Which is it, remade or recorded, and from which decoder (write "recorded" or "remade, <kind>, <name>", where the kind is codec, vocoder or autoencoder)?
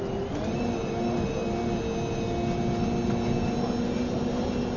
recorded